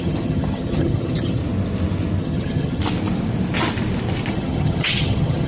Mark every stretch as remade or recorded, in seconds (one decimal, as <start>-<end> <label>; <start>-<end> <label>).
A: 0.0-1.4 remade; 1.4-2.2 recorded; 2.2-2.8 remade; 2.8-4.3 recorded; 4.3-5.5 remade